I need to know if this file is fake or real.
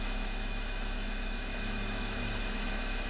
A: fake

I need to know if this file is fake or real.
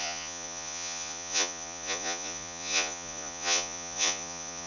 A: fake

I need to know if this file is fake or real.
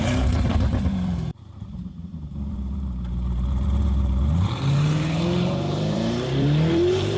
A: fake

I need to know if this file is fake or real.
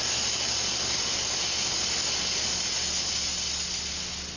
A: real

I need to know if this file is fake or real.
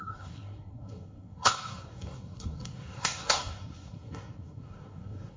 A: fake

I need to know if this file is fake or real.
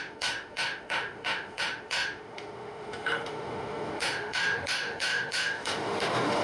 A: fake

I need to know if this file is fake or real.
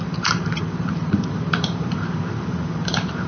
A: fake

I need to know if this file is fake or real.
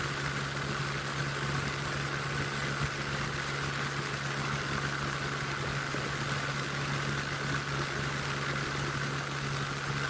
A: real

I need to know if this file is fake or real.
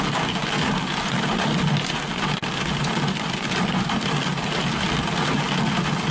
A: real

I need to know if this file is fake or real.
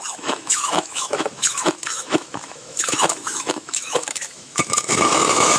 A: fake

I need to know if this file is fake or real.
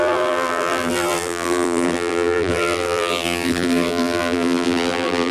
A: fake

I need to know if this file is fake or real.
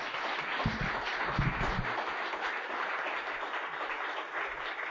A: real